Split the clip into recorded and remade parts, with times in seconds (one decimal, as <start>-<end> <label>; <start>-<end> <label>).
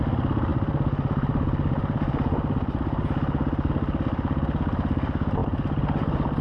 0.0-6.4 recorded